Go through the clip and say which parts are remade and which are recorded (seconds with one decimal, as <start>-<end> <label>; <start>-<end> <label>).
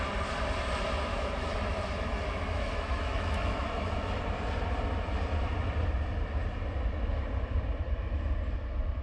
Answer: 0.0-1.1 recorded; 1.1-4.2 remade; 4.2-9.0 recorded